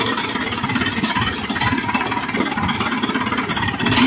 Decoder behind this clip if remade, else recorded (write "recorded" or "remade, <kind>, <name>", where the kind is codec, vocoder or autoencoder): remade, vocoder, BigVGAN v2